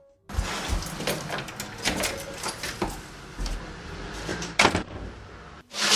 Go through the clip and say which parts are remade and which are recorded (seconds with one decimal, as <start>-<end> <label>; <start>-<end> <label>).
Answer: 0.0-4.3 recorded; 4.3-5.2 remade; 5.2-6.0 recorded